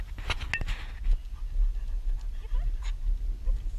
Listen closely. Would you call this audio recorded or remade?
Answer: recorded